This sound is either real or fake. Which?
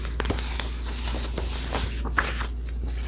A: real